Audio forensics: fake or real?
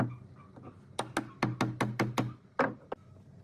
real